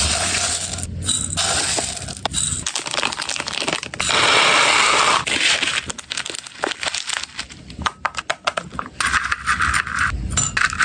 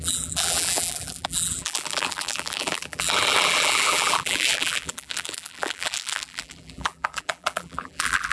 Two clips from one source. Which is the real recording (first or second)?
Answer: first